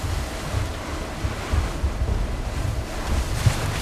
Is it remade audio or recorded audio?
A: recorded